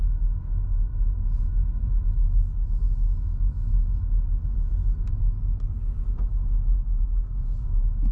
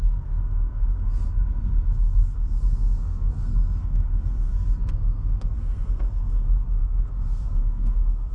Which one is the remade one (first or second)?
second